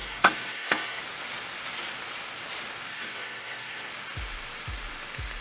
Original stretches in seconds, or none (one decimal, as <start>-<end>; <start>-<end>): 1.0-2.9; 3.9-5.4